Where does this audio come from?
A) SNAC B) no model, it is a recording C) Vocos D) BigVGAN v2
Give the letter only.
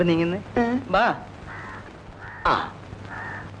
B